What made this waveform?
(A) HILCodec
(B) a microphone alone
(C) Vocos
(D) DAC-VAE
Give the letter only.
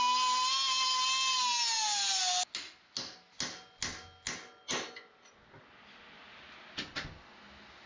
B